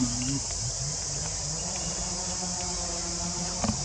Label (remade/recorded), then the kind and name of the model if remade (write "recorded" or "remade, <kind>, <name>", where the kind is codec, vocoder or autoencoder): recorded